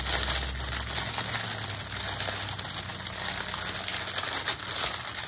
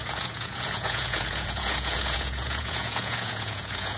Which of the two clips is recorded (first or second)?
first